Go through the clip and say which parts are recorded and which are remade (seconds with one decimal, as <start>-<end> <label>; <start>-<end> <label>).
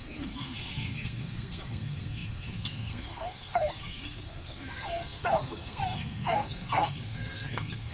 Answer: 0.0-7.9 remade